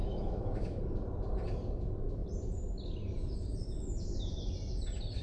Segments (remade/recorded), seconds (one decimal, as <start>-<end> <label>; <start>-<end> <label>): 0.0-0.8 remade; 0.8-5.2 recorded